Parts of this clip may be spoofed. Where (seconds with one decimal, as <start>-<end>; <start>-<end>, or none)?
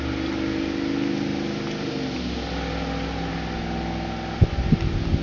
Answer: none